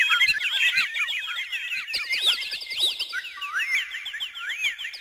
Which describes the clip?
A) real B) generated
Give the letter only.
A